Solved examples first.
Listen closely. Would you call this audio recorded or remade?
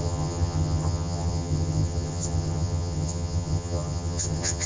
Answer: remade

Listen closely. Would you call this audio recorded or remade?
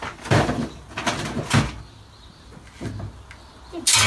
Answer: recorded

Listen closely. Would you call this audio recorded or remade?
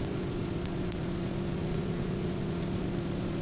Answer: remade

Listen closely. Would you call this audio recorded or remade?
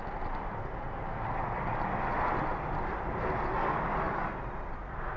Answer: recorded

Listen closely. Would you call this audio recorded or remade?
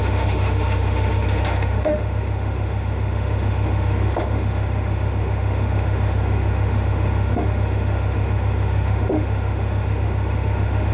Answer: remade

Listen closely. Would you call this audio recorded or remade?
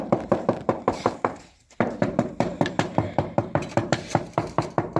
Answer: remade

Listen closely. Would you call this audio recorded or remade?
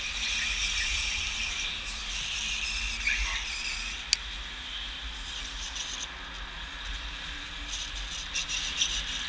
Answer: recorded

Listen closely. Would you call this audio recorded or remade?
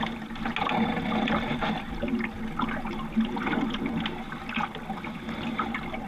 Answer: recorded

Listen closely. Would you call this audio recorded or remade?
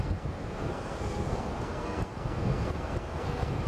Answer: remade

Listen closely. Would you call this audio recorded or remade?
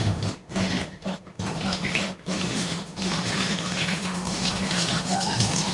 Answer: remade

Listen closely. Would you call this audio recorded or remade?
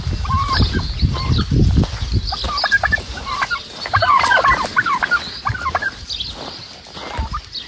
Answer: recorded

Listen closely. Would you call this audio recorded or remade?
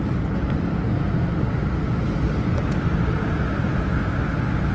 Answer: recorded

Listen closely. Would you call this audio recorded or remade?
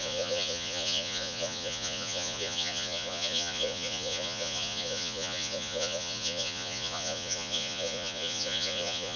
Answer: remade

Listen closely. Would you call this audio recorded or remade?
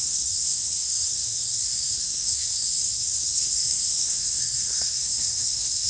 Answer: remade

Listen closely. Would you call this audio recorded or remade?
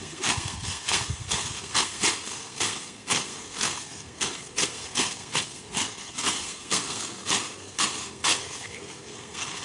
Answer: remade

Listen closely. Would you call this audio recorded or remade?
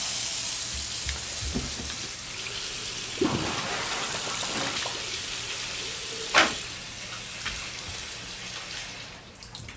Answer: recorded